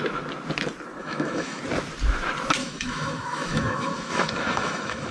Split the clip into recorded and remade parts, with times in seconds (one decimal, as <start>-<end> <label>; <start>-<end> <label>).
0.0-1.0 recorded; 1.0-1.6 remade; 1.6-2.6 recorded; 2.6-5.1 remade